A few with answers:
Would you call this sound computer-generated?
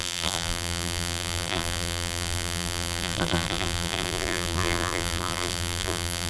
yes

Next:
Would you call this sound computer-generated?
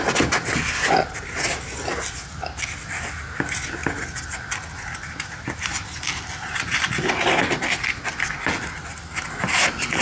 no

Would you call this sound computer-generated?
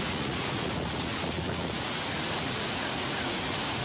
yes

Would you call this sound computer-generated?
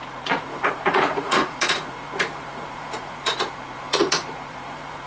yes